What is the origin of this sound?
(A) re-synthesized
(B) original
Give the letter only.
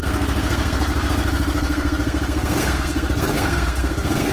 A